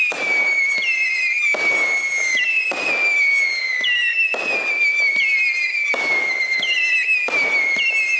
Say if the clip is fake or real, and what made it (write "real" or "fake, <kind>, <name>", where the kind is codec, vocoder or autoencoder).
real